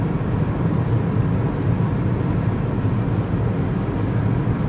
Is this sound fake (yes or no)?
no